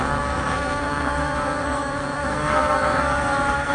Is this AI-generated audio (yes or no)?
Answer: yes